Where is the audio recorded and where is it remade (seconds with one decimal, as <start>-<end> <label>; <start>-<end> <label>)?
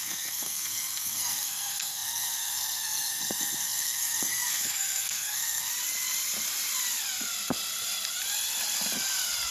0.0-5.7 remade; 5.7-9.5 recorded